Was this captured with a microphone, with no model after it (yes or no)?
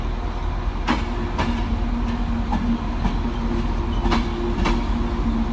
yes